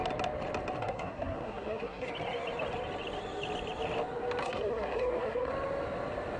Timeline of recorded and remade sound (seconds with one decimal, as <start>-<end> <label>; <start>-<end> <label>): 0.0-0.8 recorded; 0.8-2.1 remade; 2.1-4.4 recorded; 4.4-5.5 remade; 5.5-6.4 recorded